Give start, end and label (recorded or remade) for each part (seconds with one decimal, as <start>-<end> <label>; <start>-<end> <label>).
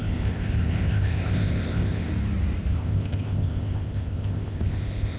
0.0-2.1 remade; 2.1-2.7 recorded; 2.7-5.2 remade